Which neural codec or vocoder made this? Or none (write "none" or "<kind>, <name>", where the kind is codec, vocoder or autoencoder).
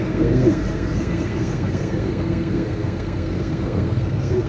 codec, SNAC